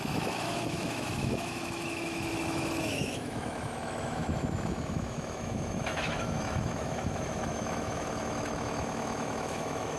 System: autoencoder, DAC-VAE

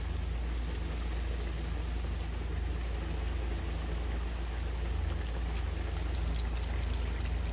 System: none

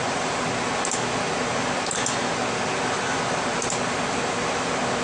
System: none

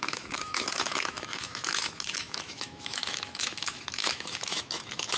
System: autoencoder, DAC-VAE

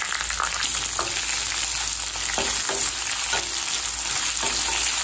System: none